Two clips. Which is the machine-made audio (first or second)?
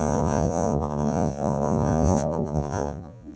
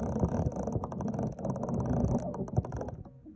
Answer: first